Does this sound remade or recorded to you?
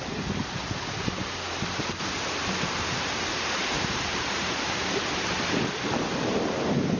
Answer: remade